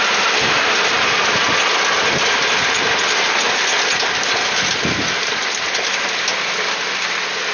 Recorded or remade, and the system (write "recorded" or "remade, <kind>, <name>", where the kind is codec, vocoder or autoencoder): recorded